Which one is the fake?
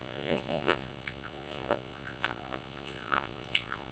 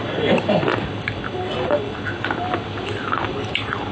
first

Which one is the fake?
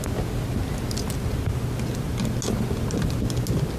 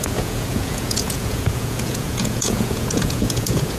second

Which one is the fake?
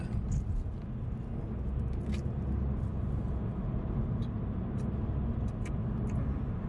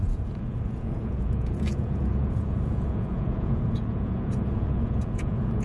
second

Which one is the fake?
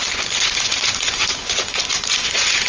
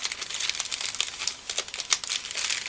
first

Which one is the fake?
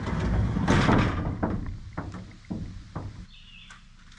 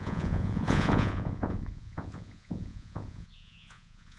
second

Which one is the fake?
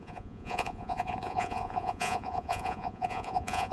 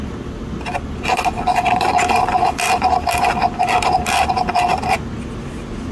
first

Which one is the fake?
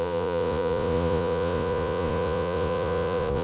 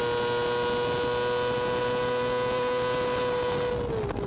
first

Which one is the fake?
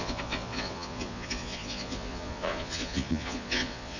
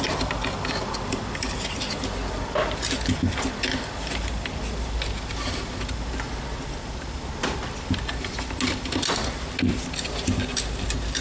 first